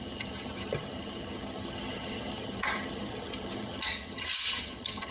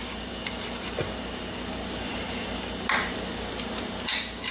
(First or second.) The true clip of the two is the second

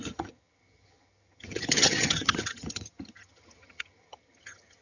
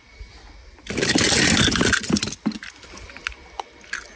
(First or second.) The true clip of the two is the second